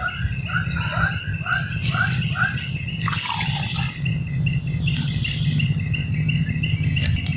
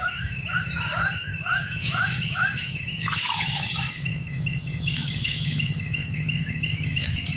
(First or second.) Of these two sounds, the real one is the first